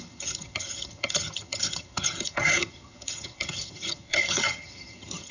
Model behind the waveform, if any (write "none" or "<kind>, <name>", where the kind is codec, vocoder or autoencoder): vocoder, HiFi-GAN